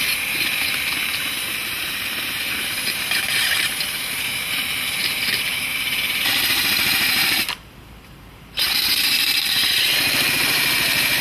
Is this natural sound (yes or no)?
no